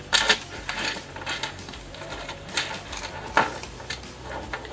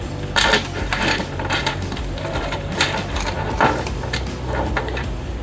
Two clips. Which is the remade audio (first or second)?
second